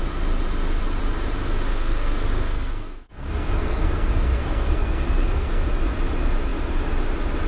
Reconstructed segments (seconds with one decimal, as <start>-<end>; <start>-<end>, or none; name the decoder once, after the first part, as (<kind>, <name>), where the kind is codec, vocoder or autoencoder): 1.7-5.7 (codec, SNAC)

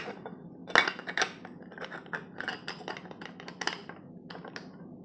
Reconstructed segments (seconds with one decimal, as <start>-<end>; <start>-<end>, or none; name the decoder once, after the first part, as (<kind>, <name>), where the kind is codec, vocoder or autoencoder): none

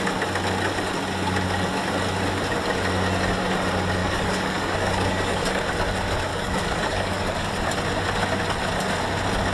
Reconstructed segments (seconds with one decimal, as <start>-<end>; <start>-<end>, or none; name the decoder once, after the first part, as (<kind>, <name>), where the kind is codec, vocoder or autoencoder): 4.0-5.6 (codec, DAC); 6.3-7.5

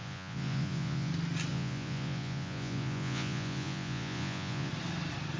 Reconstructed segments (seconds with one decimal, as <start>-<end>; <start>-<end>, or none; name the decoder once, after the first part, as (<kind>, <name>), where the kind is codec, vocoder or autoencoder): 0.0-1.1 (vocoder, Vocos); 1.5-4.7

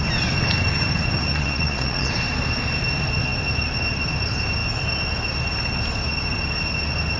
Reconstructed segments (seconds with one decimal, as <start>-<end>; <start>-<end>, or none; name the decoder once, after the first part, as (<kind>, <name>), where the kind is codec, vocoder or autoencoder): 1.3-2.1 (vocoder, Vocos)

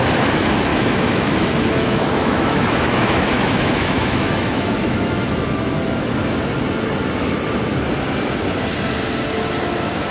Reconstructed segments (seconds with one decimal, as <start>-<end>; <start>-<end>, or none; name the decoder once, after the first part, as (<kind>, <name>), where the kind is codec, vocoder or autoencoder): 0.7-5.7 (autoencoder, DAC-VAE)

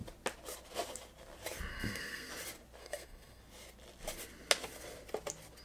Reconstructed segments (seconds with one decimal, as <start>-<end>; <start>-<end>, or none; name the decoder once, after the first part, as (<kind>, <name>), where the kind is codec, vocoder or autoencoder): 1.7-2.3 (codec, SNAC); 2.8-3.4